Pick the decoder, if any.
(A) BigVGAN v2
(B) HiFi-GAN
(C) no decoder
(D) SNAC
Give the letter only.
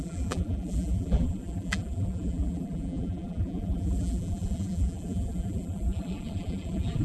A